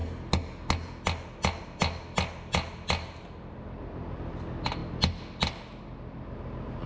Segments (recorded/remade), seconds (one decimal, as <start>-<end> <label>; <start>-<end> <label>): 0.0-6.9 recorded